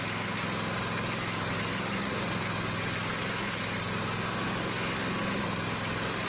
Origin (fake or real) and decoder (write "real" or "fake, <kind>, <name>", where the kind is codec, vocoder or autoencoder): real